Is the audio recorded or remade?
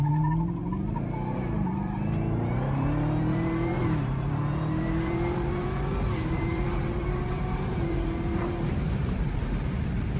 remade